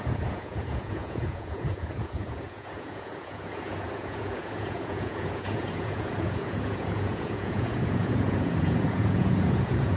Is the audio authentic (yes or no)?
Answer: no